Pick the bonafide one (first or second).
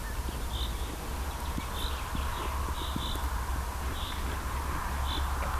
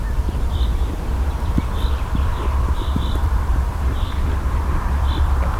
first